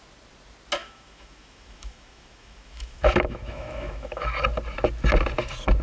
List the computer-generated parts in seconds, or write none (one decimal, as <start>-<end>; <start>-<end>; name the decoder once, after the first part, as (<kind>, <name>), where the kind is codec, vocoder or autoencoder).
0.8-4.3 (autoencoder, DAC-VAE)